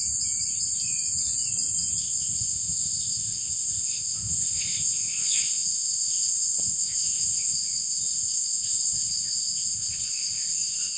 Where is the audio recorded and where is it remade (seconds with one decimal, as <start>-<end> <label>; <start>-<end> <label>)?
0.0-2.0 recorded; 2.0-11.0 remade